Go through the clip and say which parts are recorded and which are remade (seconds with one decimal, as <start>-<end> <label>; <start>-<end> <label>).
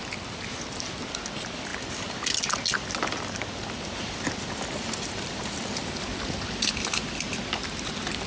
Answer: 0.0-8.3 recorded